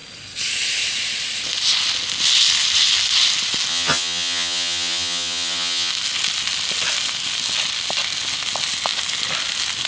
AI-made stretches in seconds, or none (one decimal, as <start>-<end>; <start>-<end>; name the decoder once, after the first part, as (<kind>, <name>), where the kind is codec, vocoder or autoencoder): 3.7-5.9 (vocoder, HiFi-GAN)